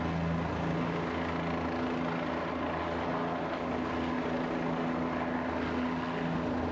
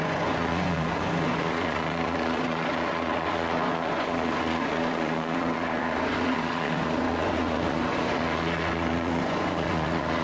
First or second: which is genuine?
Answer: first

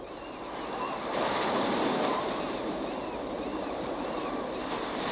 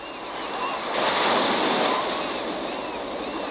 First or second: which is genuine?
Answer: second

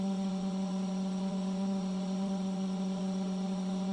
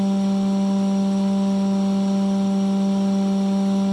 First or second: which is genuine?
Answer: second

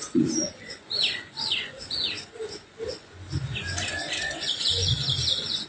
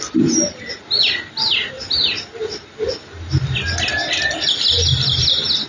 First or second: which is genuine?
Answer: second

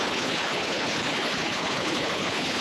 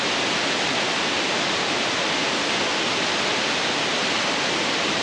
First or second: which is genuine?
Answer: second